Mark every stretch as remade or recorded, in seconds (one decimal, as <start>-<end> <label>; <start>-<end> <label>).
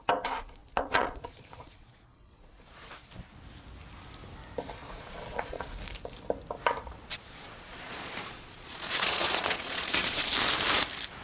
0.0-0.6 recorded; 0.6-2.9 remade; 2.9-4.8 recorded; 4.8-5.7 remade; 5.7-6.8 recorded; 6.8-10.2 remade; 10.2-11.2 recorded